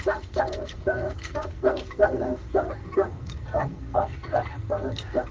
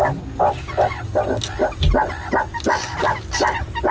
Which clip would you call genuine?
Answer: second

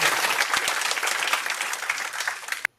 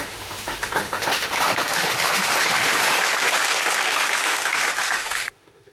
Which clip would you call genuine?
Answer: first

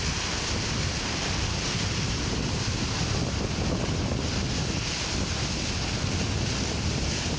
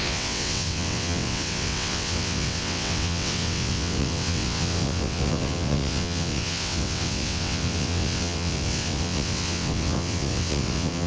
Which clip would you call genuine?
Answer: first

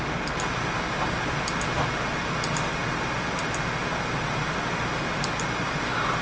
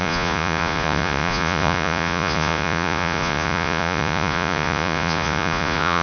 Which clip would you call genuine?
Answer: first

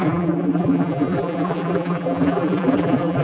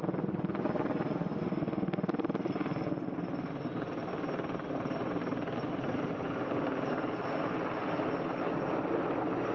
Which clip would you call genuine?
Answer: second